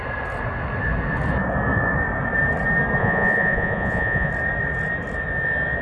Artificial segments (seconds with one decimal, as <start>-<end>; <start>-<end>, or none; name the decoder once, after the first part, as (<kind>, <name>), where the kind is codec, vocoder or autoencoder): 3.0-4.3 (vocoder, Vocos)